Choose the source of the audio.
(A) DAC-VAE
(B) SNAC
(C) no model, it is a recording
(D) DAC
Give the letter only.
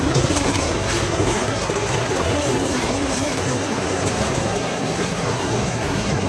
B